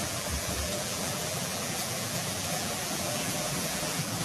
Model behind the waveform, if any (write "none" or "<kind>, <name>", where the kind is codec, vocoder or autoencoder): vocoder, BigVGAN v2